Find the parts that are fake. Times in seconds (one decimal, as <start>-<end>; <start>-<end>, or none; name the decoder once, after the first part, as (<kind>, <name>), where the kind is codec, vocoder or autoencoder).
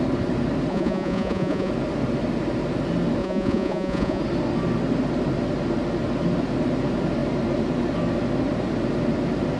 0.7-1.7 (vocoder, Vocos); 3.2-4.2